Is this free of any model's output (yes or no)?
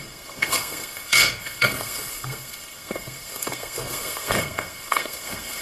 no